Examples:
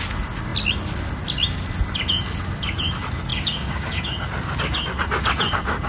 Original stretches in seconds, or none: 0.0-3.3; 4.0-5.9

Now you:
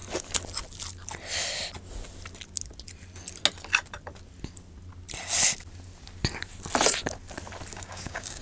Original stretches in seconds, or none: 0.0-7.7

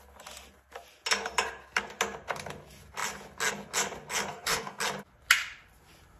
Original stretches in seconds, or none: 0.0-4.3; 4.8-6.2